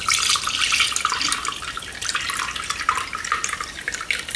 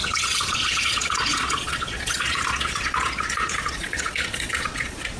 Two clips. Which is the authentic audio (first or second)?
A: first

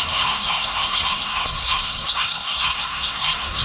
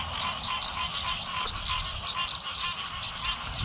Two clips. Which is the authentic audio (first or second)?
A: second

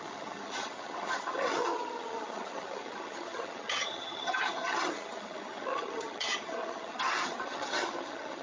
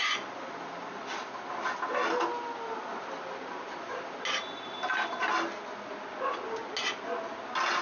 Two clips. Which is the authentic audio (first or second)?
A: second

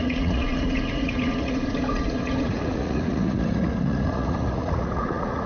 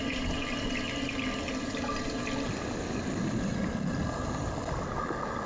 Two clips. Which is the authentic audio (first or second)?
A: second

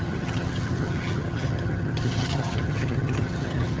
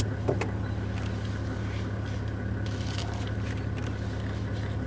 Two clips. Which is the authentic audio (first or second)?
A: second